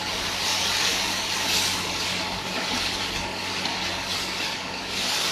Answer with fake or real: fake